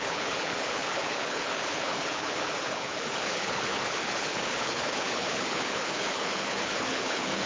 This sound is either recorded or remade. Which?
remade